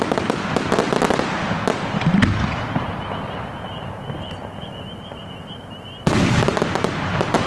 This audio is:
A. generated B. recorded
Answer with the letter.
B